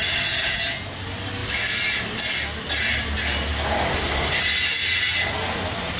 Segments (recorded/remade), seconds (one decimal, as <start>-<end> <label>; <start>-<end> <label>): 0.0-3.9 recorded; 3.9-4.4 remade; 4.4-6.0 recorded